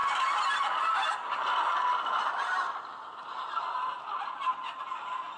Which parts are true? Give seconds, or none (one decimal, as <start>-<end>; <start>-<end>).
0.0-1.1; 2.9-4.0